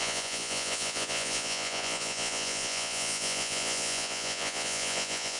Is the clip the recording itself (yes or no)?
no